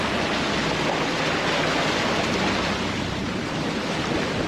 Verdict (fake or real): real